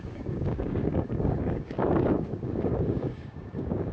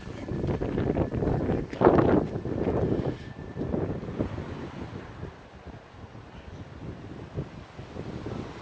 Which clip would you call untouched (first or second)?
second